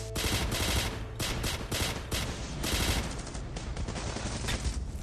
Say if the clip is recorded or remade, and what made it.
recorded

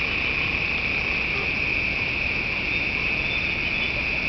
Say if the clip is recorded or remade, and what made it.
recorded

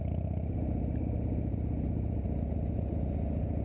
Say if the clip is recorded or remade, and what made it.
recorded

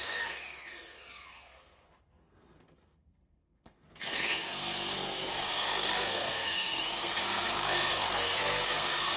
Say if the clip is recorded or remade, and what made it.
remade, codec, SNAC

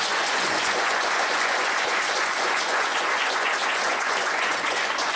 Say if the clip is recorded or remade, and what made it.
remade, vocoder, Vocos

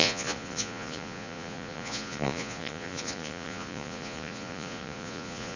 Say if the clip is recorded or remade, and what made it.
remade, vocoder, Vocos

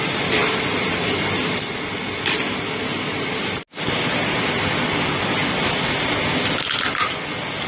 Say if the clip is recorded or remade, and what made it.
recorded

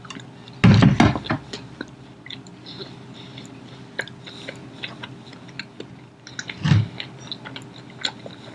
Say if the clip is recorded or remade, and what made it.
recorded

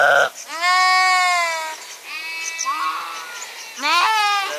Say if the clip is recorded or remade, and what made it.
recorded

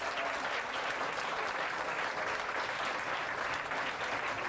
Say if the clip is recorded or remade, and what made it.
recorded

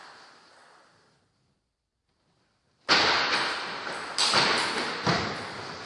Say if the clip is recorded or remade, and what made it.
recorded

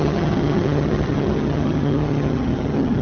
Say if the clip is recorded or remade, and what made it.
remade, vocoder, HiFi-GAN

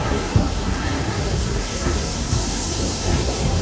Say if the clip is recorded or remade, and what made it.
remade, codec, SNAC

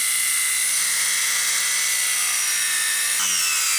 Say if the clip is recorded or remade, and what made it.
recorded